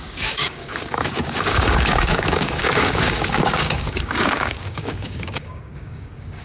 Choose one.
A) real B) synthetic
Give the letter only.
B